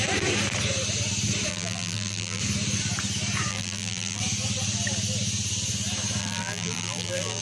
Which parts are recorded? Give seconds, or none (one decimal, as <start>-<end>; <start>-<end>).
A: 0.0-1.5; 2.4-3.5; 4.2-6.2